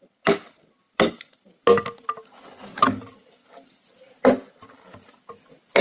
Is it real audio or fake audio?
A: real